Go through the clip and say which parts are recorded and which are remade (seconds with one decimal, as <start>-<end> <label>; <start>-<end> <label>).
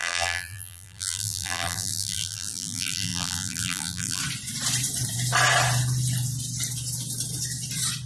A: 0.0-4.2 remade; 4.2-8.1 recorded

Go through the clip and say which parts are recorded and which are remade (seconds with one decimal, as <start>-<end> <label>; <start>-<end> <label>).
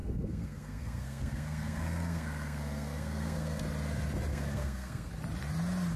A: 0.0-3.6 remade; 3.6-4.3 recorded; 4.3-5.1 remade; 5.1-6.0 recorded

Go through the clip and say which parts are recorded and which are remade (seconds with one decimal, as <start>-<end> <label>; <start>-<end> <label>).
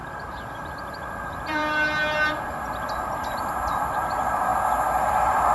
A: 0.0-1.6 remade; 1.6-3.7 recorded; 3.7-4.5 remade; 4.5-5.1 recorded; 5.1-5.5 remade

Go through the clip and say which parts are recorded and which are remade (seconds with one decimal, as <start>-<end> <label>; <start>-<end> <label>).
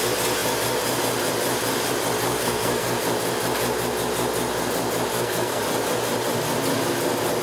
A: 0.0-2.3 recorded; 2.3-3.1 remade; 3.1-5.1 recorded; 5.1-5.6 remade; 5.6-7.4 recorded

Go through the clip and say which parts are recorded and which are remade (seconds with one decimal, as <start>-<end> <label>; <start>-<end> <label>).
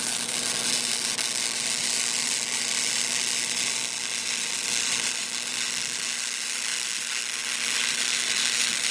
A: 0.0-8.9 recorded